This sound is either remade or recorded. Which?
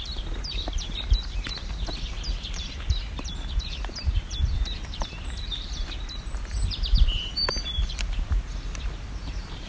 remade